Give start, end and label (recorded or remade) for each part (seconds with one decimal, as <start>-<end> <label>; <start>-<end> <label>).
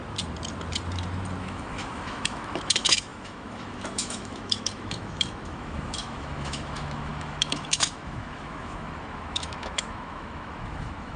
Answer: 0.0-1.4 recorded; 1.4-11.2 remade